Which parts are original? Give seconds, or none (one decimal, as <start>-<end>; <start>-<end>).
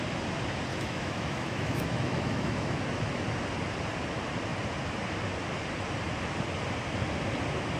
0.0-0.7; 2.8-7.8